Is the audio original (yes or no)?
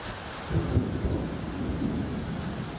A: yes